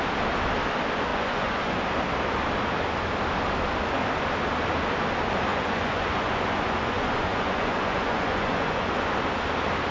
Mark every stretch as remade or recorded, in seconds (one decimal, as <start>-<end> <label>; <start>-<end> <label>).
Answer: 0.0-1.1 recorded; 1.1-1.8 remade; 1.8-5.5 recorded; 5.5-8.9 remade; 8.9-9.9 recorded